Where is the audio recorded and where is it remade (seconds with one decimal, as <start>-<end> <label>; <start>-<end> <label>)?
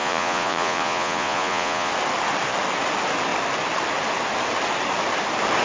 0.0-1.9 remade; 1.9-5.6 recorded